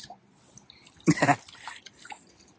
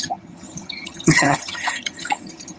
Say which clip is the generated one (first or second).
second